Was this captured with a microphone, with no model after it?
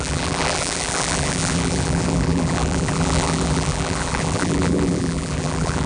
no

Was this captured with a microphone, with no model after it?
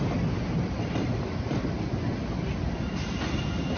yes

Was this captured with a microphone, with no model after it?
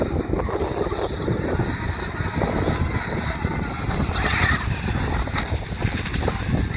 yes